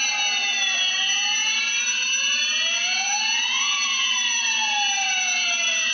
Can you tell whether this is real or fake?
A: real